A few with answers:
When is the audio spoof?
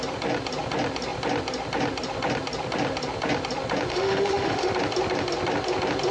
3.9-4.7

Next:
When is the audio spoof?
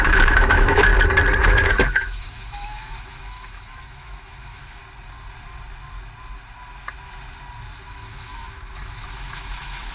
0.0-0.9; 1.4-4.8; 7.9-9.9